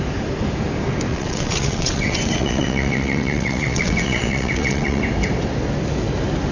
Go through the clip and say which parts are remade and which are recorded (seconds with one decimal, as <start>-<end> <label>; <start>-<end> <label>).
0.0-1.1 recorded; 1.1-5.0 remade; 5.0-6.5 recorded